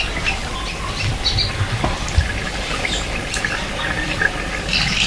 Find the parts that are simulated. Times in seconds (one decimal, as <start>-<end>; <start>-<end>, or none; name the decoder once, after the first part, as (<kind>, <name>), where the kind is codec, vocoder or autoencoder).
none